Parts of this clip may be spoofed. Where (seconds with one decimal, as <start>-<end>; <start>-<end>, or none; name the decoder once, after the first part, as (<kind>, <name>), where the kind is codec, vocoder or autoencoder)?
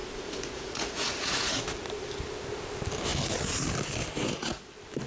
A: 0.0-1.6 (vocoder, Vocos)